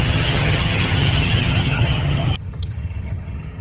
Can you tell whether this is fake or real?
fake